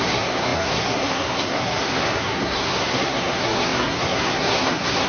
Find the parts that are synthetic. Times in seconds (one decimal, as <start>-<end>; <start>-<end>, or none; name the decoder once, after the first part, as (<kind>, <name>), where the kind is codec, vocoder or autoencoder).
0.0-5.1 (codec, SNAC)